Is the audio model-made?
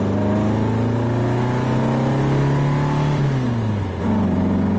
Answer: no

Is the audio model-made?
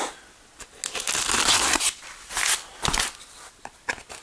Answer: no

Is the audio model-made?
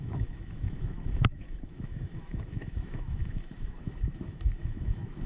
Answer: yes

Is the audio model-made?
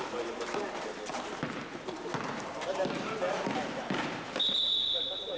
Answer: no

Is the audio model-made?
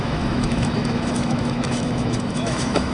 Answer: yes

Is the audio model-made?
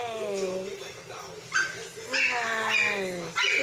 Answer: no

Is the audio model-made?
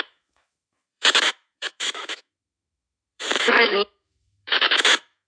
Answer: yes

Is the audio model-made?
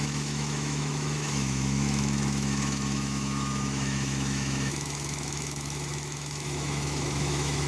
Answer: yes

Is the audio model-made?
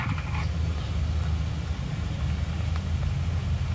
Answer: no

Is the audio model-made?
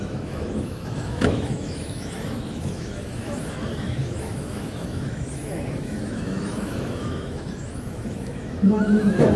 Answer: yes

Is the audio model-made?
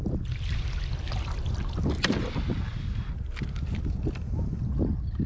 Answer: no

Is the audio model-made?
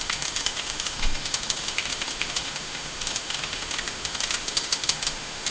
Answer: yes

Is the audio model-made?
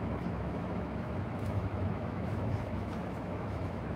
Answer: yes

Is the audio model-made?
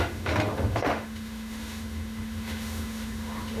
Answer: yes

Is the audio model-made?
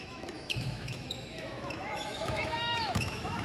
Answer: yes